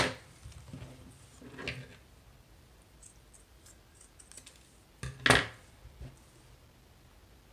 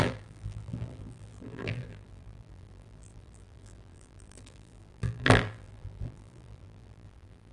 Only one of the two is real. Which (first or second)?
first